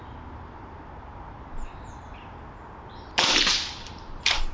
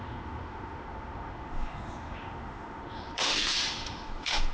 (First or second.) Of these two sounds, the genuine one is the first